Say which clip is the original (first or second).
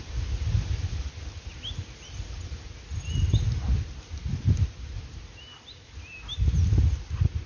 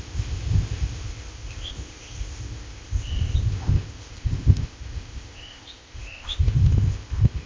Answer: first